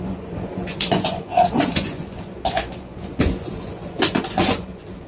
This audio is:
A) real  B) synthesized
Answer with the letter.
B